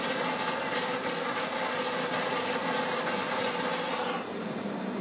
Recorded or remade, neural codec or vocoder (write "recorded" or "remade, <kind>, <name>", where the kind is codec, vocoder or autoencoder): recorded